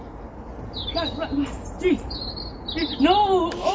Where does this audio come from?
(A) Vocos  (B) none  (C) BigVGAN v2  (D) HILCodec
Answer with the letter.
C